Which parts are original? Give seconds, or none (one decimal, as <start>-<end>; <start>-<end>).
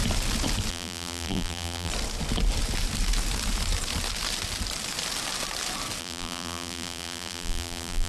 0.0-0.7; 1.9-6.0